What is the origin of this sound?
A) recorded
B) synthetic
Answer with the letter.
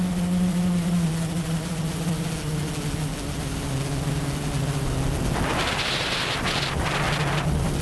A